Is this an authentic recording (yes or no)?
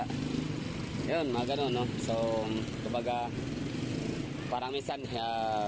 yes